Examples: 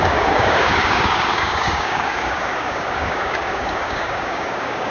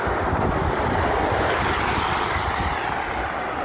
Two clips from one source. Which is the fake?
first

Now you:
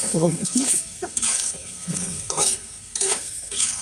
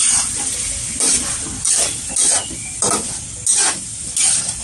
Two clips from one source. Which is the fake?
first